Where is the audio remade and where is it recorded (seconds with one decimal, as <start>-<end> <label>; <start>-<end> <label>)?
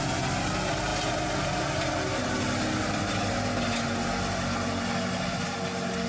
0.0-6.1 recorded